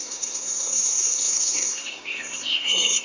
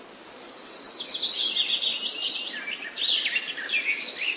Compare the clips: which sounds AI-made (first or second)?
first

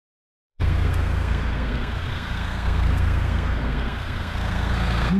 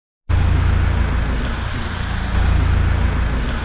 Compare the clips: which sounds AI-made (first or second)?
first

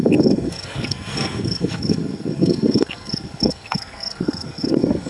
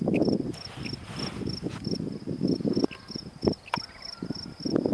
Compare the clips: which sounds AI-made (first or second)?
first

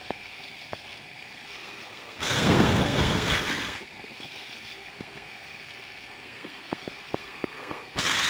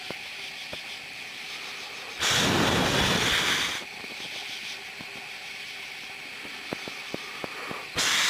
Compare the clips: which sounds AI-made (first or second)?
first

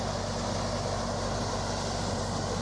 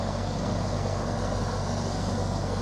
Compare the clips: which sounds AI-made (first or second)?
second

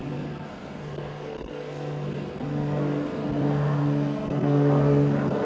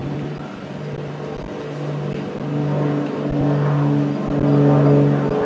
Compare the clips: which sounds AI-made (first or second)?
first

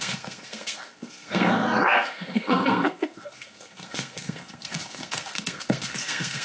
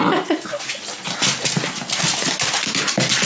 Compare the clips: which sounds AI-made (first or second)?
first